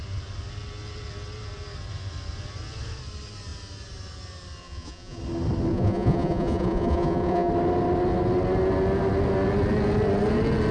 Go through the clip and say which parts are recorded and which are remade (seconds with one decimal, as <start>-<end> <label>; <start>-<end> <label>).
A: 0.0-4.6 recorded; 4.6-5.2 remade; 5.2-5.7 recorded; 5.7-7.5 remade; 7.5-10.7 recorded